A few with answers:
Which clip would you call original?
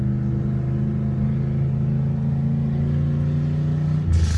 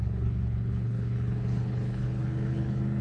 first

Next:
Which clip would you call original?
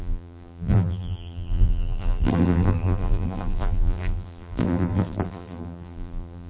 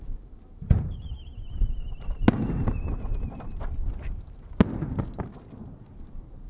second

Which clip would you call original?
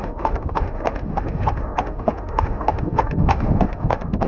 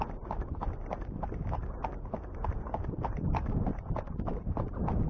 second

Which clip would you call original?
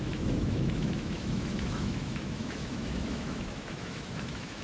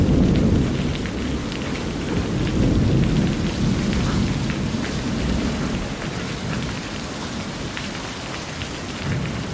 second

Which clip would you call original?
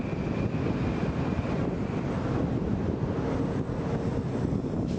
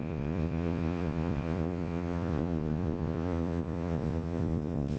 first